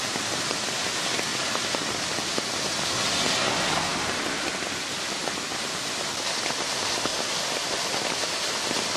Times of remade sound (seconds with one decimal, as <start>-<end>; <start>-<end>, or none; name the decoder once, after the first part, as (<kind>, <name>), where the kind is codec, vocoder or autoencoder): 1.3-2.5 (vocoder, BigVGAN v2); 3.9-6.3